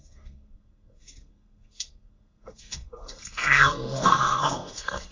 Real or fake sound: fake